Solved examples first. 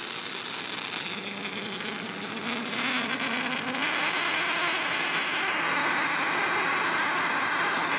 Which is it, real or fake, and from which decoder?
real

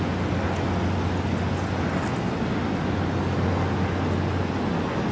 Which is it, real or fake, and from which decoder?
real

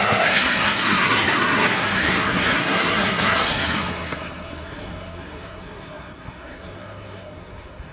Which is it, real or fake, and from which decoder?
fake, codec, SNAC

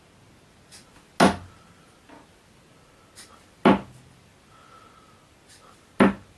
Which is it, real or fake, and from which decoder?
real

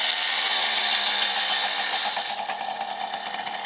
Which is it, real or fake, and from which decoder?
real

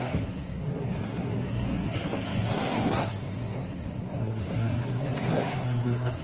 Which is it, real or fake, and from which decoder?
fake, codec, SNAC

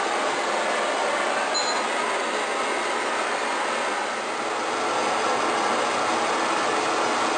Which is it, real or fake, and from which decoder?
real